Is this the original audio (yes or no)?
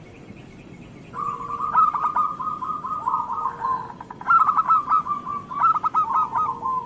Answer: yes